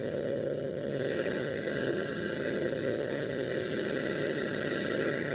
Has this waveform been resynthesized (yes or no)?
yes